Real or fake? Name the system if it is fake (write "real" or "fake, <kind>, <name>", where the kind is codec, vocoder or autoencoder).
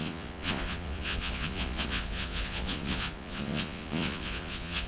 fake, vocoder, Vocos